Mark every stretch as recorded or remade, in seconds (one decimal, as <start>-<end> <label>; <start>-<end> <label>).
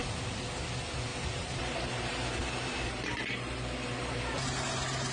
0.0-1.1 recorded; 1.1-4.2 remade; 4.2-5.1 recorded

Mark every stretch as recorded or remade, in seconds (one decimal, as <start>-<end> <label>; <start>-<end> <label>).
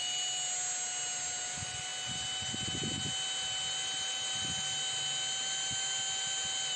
0.0-6.8 recorded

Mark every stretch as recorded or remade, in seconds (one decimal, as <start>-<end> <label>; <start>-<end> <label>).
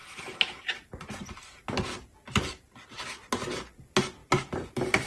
0.0-1.4 remade; 1.4-2.1 recorded; 2.1-3.3 remade; 3.3-4.2 recorded; 4.2-5.1 remade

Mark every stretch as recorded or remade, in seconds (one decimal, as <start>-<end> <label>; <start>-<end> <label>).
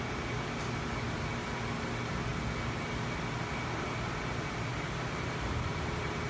0.0-4.7 recorded; 4.7-5.7 remade; 5.7-6.3 recorded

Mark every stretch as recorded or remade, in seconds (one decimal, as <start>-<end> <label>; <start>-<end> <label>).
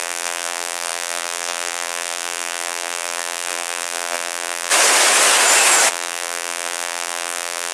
0.0-4.7 remade; 4.7-5.9 recorded; 5.9-7.7 remade